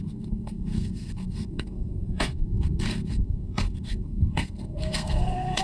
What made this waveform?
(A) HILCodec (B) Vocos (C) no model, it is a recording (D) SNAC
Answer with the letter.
D